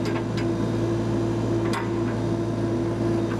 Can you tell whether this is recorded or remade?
recorded